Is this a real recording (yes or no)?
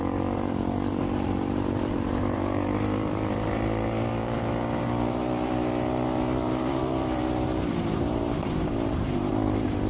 no